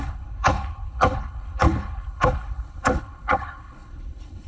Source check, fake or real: fake